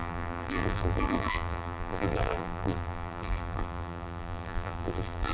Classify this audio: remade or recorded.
remade